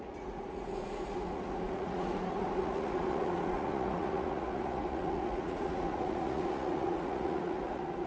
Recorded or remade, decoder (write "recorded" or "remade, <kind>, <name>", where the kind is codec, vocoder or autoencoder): remade, vocoder, Vocos